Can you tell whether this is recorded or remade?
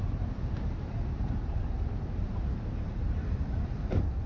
remade